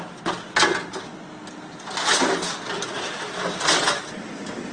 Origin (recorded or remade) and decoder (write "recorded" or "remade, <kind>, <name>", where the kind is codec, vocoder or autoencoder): recorded